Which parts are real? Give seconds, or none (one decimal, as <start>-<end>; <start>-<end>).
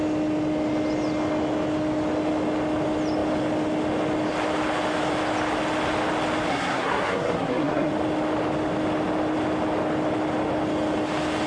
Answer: 0.0-6.5; 7.9-11.5